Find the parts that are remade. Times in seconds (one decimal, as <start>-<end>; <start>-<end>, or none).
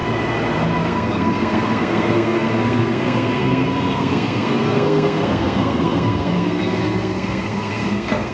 0.8-8.3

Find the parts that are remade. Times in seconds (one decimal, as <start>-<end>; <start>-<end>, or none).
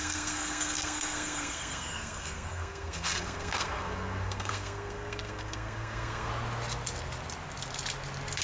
0.0-6.3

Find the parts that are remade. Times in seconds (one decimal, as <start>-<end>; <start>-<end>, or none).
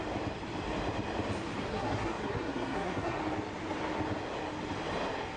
1.7-3.2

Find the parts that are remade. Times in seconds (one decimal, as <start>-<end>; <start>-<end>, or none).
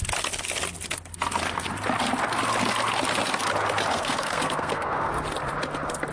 3.9-5.1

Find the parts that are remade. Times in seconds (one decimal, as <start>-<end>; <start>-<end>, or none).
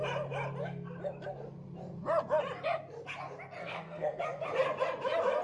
3.6-4.2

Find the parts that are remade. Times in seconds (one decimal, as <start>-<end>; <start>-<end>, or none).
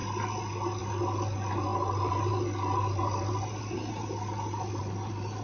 none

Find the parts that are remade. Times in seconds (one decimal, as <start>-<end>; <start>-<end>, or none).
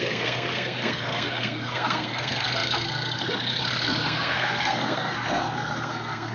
0.0-6.3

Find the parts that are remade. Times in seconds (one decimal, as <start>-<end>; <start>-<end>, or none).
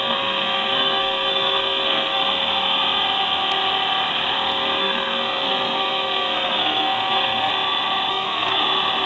0.0-2.2; 4.8-7.5; 8.1-8.6